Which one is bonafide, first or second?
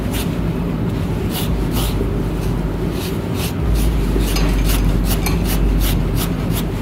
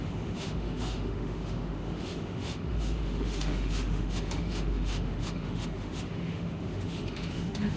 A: first